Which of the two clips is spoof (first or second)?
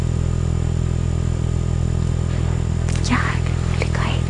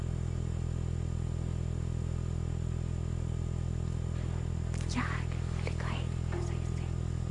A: first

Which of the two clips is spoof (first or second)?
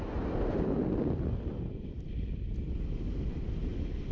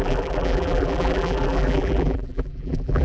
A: second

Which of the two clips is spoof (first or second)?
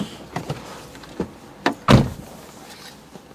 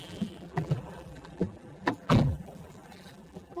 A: second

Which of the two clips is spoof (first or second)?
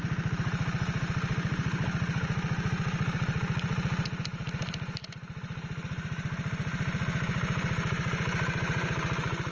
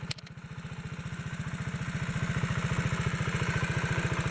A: first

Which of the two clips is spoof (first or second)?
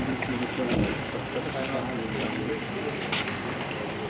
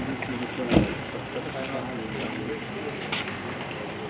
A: first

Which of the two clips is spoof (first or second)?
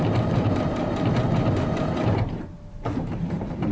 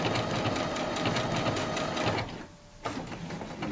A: first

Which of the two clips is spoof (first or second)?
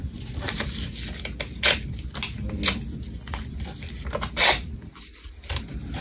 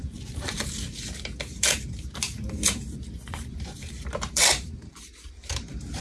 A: second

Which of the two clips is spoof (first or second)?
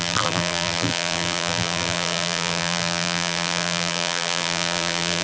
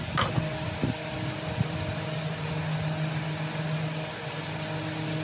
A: first